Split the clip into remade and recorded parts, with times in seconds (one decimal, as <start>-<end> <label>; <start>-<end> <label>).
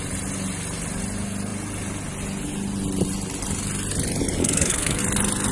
0.0-4.4 recorded; 4.4-5.0 remade; 5.0-5.5 recorded